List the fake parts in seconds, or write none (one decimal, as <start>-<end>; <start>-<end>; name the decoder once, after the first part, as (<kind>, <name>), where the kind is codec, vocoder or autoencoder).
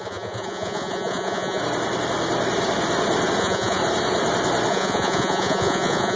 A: 0.0-1.6 (vocoder, Vocos); 3.4-3.8; 4.7-6.2